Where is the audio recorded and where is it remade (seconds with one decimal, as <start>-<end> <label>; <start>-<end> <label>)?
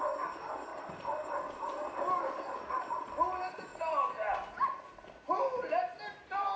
0.0-0.7 recorded; 0.7-2.8 remade; 2.8-3.7 recorded; 3.7-5.8 remade; 5.8-6.6 recorded